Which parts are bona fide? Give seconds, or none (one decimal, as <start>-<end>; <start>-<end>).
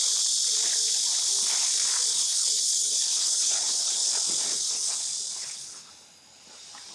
0.0-2.1; 4.1-4.5; 5.0-5.4; 5.9-6.9